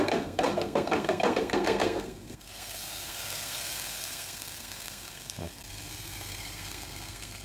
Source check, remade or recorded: remade